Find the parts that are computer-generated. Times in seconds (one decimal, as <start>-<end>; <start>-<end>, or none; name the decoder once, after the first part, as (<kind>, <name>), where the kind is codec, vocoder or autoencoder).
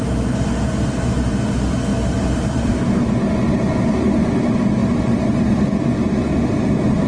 1.9-2.7 (vocoder, BigVGAN v2); 4.8-7.1